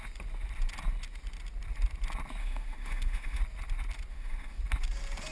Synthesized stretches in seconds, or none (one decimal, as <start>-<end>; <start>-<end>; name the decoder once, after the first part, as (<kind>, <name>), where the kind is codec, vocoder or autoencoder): 2.4-3.4 (autoencoder, DAC-VAE); 4.1-4.6